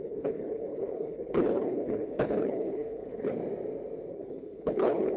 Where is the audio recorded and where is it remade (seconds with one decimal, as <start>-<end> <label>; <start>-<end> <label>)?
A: 0.0-3.4 remade; 3.4-4.1 recorded; 4.1-5.2 remade